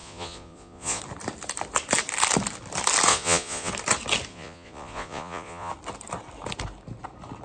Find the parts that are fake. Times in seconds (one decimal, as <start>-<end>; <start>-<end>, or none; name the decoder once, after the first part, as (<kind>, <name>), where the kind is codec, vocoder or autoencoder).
0.0-1.0 (vocoder, Vocos); 3.1-3.7; 4.3-5.7